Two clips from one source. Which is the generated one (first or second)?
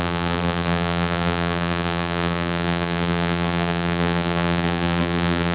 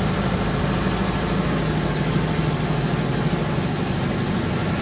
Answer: first